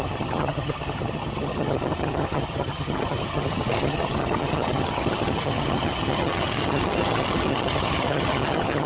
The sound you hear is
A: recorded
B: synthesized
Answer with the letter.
B